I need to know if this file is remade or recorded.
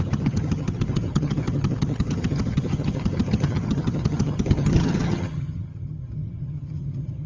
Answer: remade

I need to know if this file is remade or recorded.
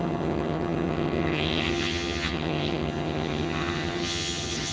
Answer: remade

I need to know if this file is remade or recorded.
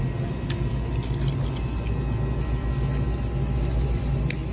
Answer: recorded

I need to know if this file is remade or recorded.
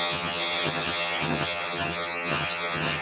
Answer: remade